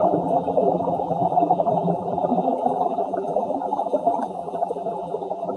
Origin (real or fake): fake